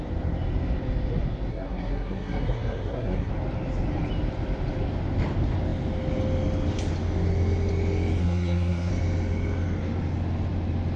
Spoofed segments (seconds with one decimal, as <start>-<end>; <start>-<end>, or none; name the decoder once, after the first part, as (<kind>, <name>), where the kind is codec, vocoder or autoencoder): 1.5-3.3 (codec, SNAC); 8.2-8.9

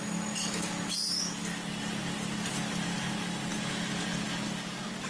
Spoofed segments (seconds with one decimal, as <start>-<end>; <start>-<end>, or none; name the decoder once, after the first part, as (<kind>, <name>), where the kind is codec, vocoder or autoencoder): none

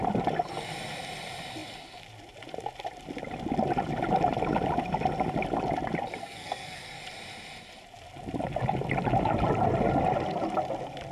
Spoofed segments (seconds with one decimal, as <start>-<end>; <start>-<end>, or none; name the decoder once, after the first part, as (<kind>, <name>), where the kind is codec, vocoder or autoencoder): 6.2-7.0 (codec, SNAC)

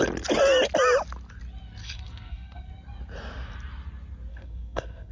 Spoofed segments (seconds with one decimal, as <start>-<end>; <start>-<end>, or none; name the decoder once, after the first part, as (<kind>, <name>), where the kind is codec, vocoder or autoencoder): 1.8-2.7 (codec, SNAC); 4.3-5.1

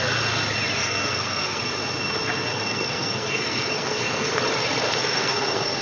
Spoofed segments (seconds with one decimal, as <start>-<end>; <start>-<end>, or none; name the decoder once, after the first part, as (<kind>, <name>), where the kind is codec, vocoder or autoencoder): 0.8-1.6 (codec, SNAC); 2.5-4.4; 5.0-5.8

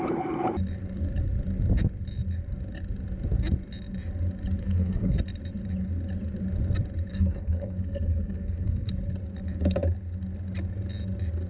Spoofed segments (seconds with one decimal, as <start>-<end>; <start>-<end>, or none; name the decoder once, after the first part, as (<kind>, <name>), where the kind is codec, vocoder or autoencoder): 4.6-5.1 (codec, SNAC); 7.1-8.9